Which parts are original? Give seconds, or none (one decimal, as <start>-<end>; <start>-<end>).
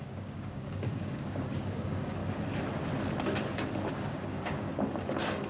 2.2-3.9; 4.7-5.5